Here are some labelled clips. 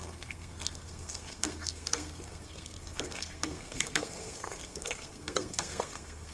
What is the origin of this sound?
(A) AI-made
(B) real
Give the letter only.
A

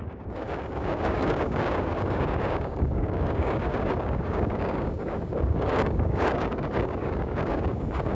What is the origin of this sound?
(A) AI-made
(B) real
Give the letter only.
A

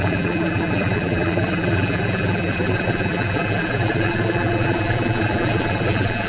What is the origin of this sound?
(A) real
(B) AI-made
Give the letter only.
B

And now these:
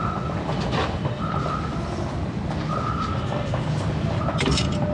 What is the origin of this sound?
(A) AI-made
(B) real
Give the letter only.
B